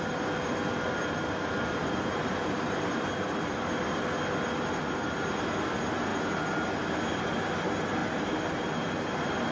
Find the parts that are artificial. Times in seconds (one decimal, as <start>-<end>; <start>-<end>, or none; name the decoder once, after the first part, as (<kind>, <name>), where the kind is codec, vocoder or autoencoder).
1.8-3.8 (vocoder, BigVGAN v2); 8.0-8.6